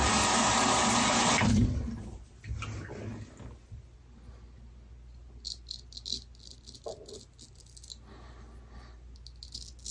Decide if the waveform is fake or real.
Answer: real